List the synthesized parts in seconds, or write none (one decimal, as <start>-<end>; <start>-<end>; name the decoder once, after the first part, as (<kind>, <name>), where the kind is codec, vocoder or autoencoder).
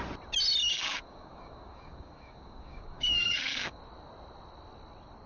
0.6-3.8 (codec, DAC)